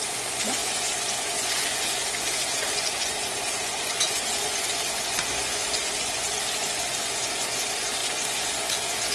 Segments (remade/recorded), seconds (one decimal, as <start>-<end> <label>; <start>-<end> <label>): 0.0-9.1 remade